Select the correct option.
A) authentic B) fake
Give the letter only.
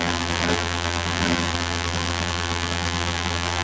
B